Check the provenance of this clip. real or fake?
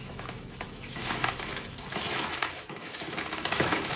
fake